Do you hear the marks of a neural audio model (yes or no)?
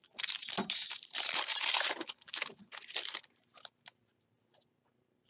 yes